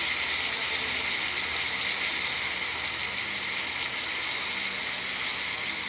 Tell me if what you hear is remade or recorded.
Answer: recorded